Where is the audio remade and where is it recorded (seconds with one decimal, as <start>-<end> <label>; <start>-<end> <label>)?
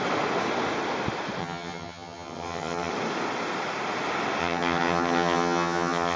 0.0-1.4 recorded; 1.4-2.9 remade; 2.9-4.4 recorded; 4.4-6.2 remade